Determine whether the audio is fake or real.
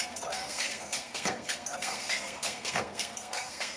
fake